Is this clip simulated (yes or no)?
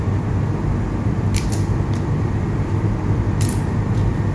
no